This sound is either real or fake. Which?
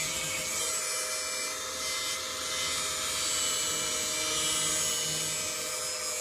real